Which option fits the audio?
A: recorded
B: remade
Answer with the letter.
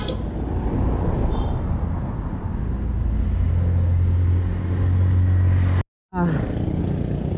A